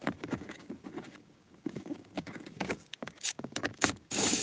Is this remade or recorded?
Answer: remade